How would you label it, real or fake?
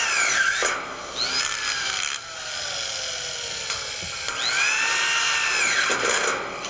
real